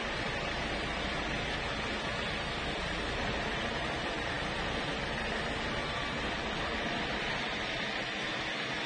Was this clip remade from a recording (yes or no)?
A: no